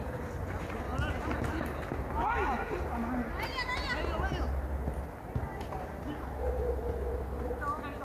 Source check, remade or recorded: recorded